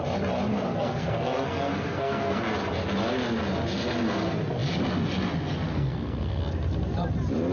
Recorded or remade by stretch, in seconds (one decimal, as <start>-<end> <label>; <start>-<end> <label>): 0.0-0.5 recorded; 0.5-2.4 remade; 2.4-5.7 recorded; 5.7-6.4 remade; 6.4-7.5 recorded